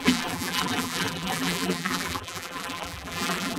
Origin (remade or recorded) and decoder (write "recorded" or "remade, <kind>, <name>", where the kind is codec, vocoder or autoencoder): remade, vocoder, BigVGAN v2